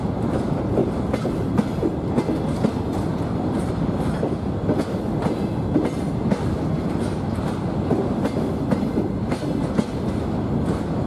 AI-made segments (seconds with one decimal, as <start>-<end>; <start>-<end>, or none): 0.8-1.5; 3.1-3.7